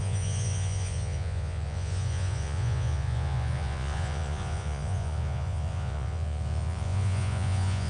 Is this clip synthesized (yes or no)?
yes